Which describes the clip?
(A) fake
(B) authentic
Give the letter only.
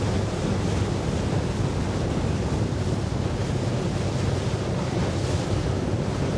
B